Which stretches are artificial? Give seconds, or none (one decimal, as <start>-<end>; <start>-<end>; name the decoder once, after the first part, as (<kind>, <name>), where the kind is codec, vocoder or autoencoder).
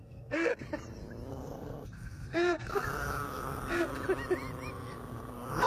0.0-0.5 (codec, SNAC); 1.3-3.9; 4.7-5.7